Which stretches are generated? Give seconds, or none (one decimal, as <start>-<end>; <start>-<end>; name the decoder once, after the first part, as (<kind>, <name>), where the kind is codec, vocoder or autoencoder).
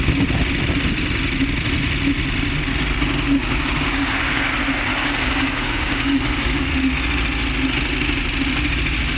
3.9-4.5 (codec, DAC); 4.9-6.7